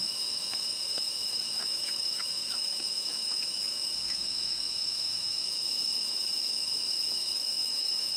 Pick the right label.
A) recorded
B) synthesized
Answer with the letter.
B